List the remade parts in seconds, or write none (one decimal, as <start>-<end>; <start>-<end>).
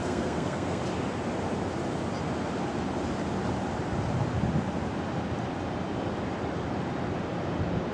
0.0-0.8